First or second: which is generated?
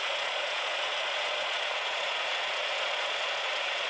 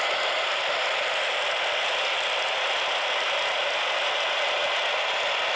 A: first